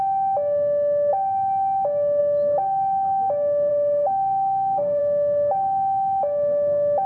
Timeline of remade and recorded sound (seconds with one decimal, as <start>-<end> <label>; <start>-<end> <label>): 0.0-3.7 recorded; 3.7-5.0 remade; 5.0-7.1 recorded